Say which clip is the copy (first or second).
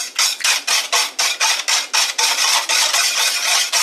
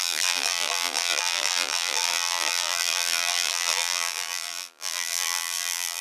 second